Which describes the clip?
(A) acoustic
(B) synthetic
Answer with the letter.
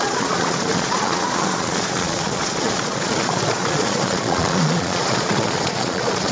B